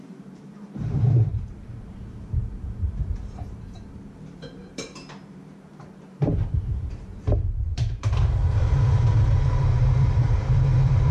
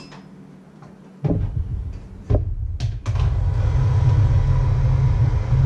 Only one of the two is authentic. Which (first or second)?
second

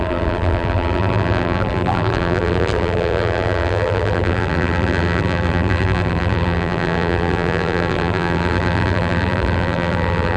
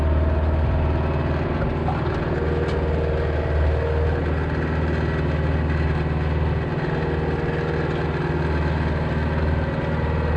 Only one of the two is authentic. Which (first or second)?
second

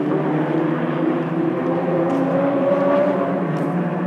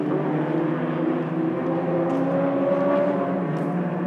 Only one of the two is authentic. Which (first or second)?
second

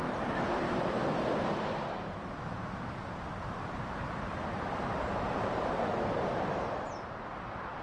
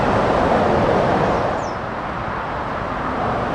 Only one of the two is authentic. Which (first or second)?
second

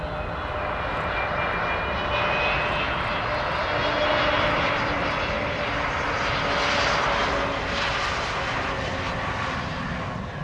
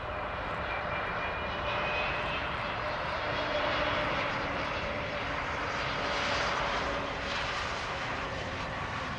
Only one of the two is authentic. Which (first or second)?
first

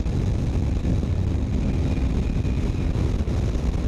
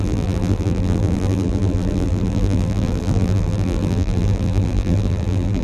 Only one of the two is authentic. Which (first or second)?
first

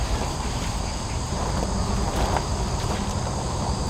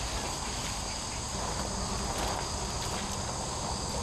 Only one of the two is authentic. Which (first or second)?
second